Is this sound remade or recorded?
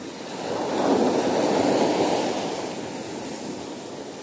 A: recorded